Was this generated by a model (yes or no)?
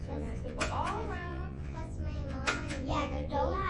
yes